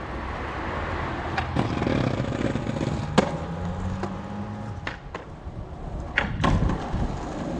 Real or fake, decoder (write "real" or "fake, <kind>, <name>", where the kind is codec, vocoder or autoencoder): real